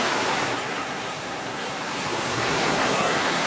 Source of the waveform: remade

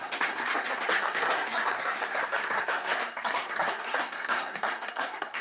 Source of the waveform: remade